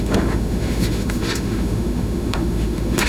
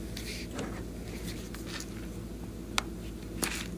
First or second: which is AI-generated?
first